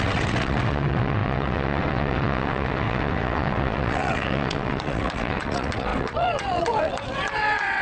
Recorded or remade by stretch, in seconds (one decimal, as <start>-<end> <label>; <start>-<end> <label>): 0.0-7.8 remade